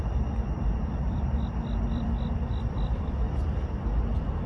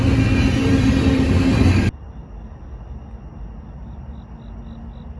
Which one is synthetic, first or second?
first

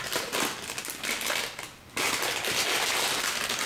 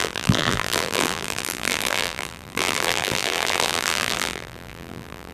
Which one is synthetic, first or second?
second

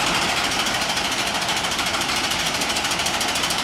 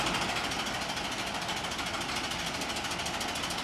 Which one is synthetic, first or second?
first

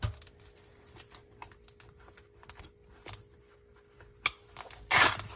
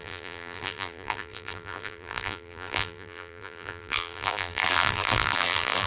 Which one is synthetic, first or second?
second